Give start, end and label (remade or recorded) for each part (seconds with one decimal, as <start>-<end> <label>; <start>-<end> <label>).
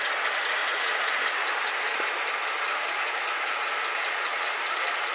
0.0-0.6 recorded; 0.6-3.7 remade; 3.7-5.1 recorded